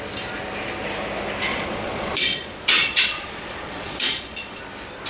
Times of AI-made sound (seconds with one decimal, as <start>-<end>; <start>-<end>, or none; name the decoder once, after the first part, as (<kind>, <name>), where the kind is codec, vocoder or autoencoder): 1.5-4.6 (vocoder, Vocos)